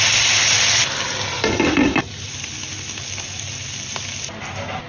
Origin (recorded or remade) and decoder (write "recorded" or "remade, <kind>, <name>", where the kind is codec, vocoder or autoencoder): recorded